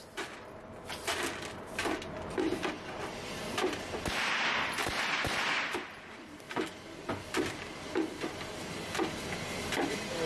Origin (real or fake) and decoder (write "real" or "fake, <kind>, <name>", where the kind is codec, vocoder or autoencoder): real